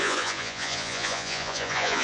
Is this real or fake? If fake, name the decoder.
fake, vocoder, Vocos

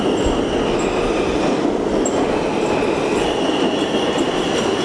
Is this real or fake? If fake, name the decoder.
real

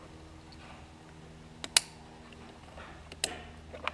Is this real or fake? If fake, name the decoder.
real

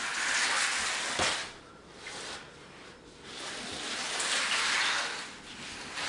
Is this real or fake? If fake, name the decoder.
real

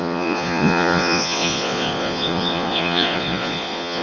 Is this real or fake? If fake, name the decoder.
fake, vocoder, Vocos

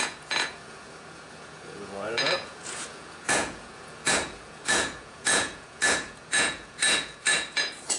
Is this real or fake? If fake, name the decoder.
fake, vocoder, Vocos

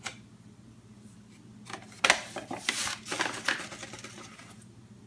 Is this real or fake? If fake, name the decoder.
real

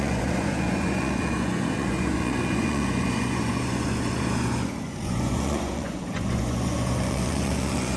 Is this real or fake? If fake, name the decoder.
fake, vocoder, Vocos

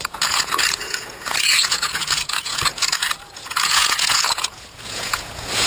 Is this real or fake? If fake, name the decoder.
fake, vocoder, Vocos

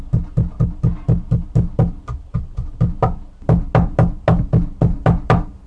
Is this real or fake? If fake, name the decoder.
real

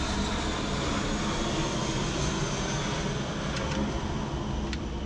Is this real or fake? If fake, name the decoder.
real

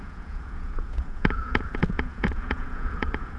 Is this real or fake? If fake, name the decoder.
fake, vocoder, Vocos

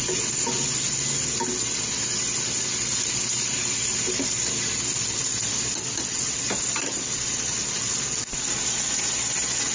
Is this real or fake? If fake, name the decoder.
real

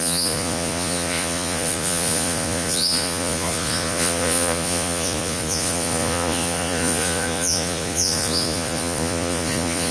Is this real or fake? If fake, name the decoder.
fake, vocoder, Vocos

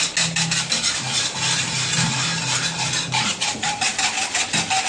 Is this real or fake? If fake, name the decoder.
real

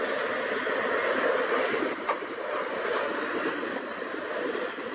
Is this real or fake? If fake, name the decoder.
real